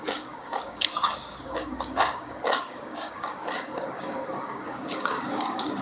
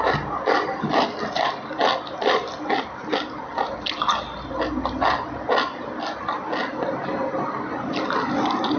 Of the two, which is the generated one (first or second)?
first